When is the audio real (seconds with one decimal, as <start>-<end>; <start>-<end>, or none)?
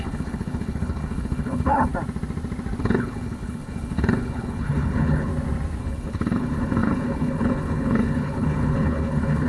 1.9-2.8; 5.3-5.8